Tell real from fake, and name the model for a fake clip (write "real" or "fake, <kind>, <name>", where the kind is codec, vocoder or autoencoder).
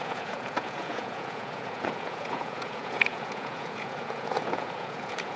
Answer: fake, vocoder, Vocos